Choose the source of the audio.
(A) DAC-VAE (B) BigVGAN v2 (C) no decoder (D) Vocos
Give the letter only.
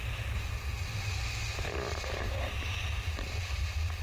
C